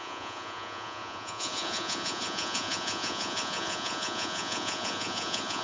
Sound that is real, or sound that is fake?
fake